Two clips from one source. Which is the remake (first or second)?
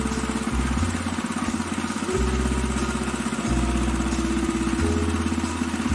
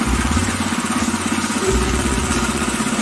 second